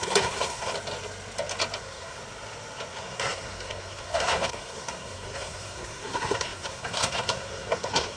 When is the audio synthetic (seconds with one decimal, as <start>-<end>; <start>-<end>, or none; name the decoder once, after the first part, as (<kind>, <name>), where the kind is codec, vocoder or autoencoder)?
0.0-0.7 (codec, SNAC); 1.8-2.2; 2.9-8.2